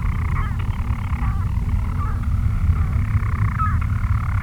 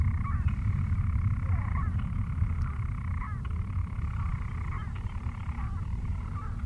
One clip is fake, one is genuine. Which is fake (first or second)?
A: second